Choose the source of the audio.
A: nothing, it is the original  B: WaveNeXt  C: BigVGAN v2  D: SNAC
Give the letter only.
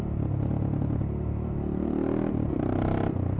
A